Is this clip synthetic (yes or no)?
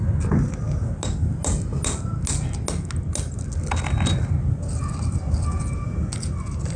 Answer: no